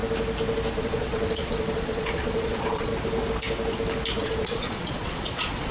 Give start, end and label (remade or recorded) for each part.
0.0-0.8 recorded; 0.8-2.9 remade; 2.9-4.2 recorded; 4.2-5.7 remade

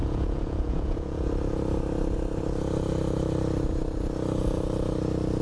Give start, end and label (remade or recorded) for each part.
0.0-1.3 remade; 1.3-5.4 recorded

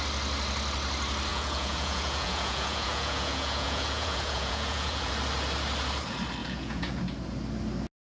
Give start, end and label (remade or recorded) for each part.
0.0-1.3 recorded; 1.3-5.1 remade; 5.1-6.4 recorded; 6.4-7.0 remade; 7.0-8.0 recorded